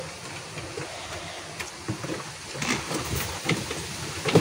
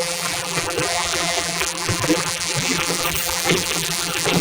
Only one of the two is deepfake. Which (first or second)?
second